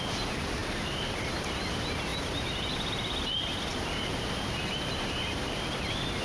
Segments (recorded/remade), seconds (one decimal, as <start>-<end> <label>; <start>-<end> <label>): 0.0-0.6 recorded; 0.6-1.6 remade; 1.6-2.1 recorded; 2.1-2.7 remade; 2.7-3.7 recorded; 3.7-5.7 remade; 5.7-6.2 recorded